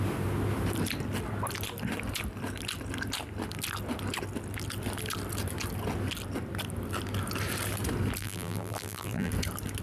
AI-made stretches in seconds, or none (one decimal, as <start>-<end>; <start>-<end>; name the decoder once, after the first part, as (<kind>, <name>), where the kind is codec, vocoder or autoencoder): 8.2-9.3 (vocoder, BigVGAN v2)